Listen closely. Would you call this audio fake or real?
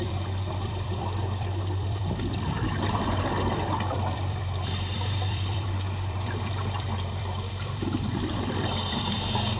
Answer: fake